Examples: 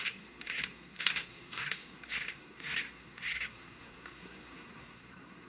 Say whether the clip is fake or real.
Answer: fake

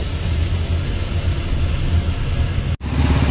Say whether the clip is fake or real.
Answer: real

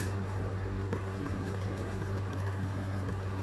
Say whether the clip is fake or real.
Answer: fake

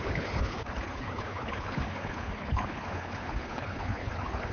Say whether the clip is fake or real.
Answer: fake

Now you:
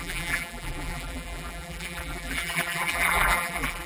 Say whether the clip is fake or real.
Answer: fake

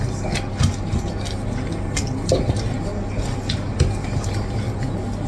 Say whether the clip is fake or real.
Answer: real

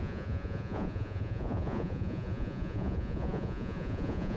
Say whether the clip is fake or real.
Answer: fake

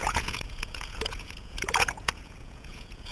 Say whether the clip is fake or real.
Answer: fake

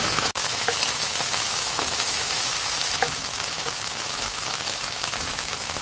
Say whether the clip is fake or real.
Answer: fake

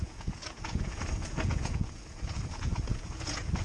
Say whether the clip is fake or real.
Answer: fake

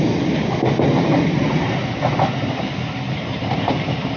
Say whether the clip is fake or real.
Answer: real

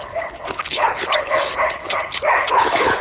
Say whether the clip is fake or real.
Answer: fake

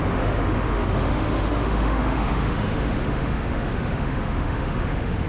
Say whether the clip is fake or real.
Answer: fake